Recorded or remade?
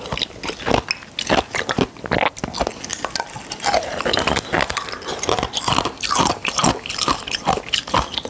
recorded